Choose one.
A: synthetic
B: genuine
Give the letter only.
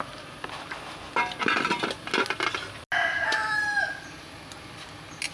B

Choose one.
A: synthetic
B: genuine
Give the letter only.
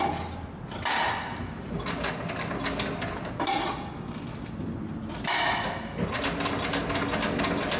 B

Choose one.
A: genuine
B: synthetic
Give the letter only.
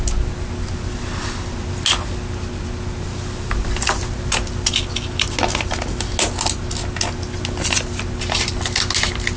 A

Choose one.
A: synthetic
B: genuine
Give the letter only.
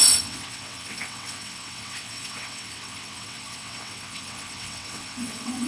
A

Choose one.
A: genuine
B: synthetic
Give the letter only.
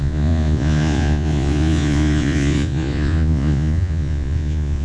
B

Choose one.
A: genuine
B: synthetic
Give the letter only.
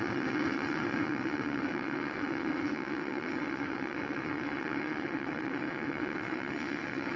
B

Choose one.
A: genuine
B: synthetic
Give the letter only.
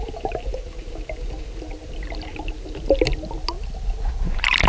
A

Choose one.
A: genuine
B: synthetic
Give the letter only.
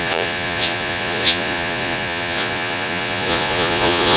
B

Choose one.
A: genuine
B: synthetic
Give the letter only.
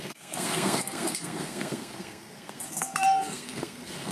B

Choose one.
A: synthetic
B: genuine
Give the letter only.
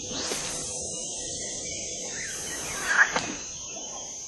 B